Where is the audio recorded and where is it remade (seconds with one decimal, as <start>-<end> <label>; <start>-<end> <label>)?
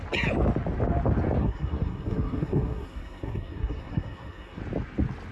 0.0-1.4 recorded; 1.4-4.6 remade; 4.6-5.3 recorded